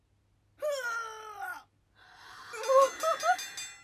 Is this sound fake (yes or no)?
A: no